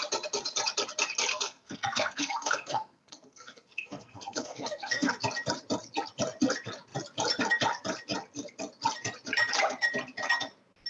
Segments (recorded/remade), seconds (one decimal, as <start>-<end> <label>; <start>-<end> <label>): 0.0-1.3 recorded; 1.3-5.1 remade; 5.1-10.9 recorded